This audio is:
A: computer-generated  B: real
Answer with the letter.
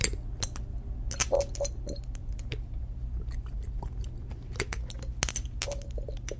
B